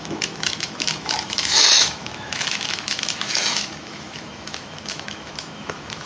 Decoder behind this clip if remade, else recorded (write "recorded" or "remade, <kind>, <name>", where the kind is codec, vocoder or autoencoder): remade, autoencoder, DAC-VAE